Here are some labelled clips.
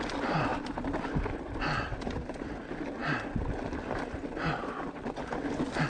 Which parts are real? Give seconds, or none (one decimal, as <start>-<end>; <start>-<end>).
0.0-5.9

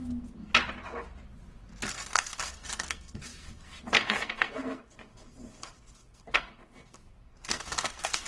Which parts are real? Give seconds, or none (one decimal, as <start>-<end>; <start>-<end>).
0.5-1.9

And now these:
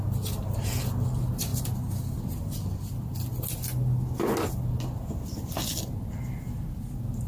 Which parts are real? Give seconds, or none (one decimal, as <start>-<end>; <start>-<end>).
0.0-7.3

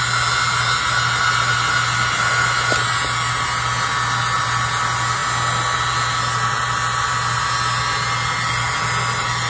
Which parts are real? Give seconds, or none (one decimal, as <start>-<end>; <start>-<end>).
0.0-9.5